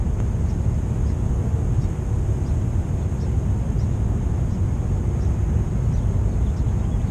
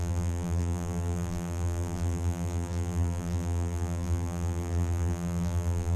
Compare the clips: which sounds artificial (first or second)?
second